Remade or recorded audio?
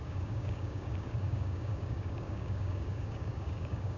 remade